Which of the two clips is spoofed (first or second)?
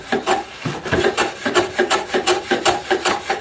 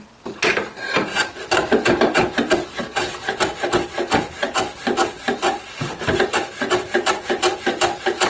first